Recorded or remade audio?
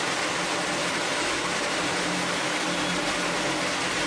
recorded